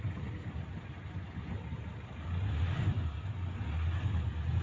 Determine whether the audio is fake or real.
real